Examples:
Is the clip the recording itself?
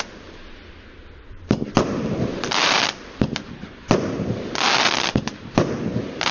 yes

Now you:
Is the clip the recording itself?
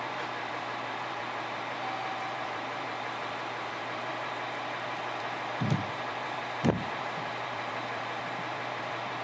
no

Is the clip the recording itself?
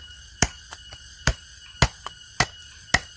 yes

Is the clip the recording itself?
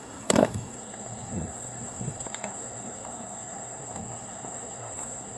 no